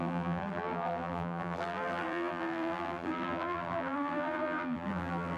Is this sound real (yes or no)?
no